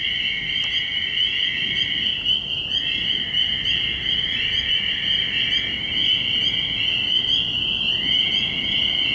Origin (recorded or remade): recorded